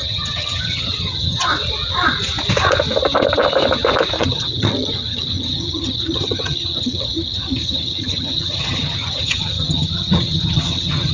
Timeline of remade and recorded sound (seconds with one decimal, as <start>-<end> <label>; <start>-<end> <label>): 0.0-1.5 remade; 1.5-4.2 recorded; 4.2-11.1 remade